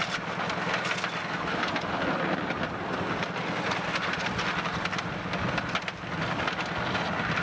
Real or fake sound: real